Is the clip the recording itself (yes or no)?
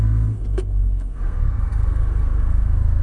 no